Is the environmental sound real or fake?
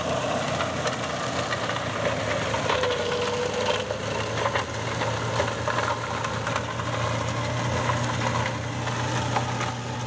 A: real